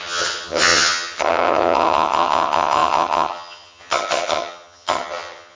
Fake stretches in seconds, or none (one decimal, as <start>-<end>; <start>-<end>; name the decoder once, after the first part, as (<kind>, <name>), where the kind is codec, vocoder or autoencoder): 0.0-5.6 (vocoder, HiFi-GAN)